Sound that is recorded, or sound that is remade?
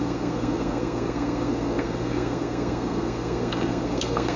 remade